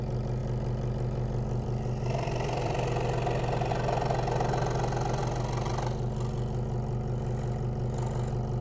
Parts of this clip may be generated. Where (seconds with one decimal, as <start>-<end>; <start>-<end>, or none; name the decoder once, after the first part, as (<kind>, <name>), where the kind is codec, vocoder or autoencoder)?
0.4-3.7 (vocoder, BigVGAN v2)